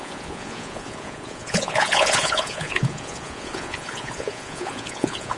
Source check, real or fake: fake